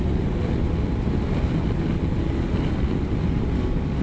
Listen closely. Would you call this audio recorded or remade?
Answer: recorded